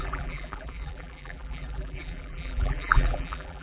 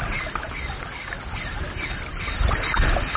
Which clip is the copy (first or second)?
first